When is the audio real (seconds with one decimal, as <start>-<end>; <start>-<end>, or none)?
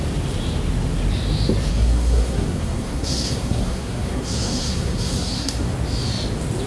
0.0-1.7; 5.7-6.7